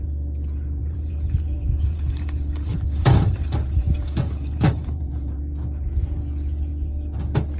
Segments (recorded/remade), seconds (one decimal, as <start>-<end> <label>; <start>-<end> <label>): 0.0-0.8 recorded; 0.8-5.4 remade; 5.4-7.6 recorded